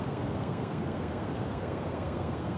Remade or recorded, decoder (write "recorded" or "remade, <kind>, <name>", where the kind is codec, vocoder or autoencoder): remade, codec, SNAC